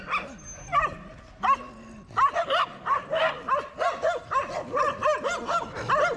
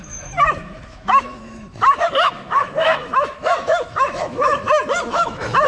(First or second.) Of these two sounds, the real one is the first